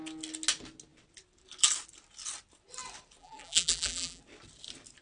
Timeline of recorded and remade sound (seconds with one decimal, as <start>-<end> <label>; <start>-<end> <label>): 0.0-3.2 recorded; 3.2-4.2 remade; 4.2-5.0 recorded